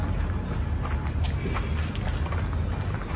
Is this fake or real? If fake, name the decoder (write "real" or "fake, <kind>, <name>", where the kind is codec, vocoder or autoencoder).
real